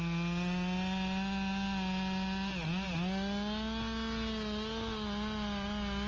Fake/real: real